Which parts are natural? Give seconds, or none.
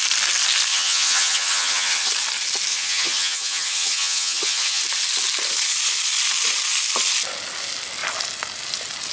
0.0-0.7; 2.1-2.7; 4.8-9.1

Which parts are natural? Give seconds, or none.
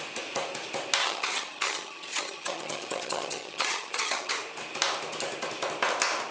0.0-1.0; 4.3-6.3